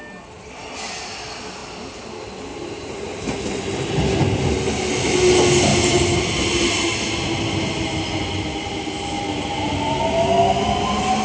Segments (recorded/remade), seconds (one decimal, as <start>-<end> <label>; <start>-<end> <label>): 0.0-1.6 recorded; 1.6-2.1 remade; 2.1-2.5 recorded; 2.5-3.1 remade; 3.1-5.7 recorded; 5.7-6.2 remade; 6.2-11.2 recorded